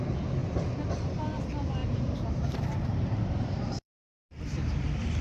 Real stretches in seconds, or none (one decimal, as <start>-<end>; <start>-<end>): 0.0-1.8